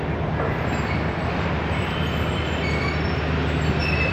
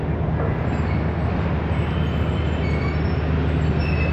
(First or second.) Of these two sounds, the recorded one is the second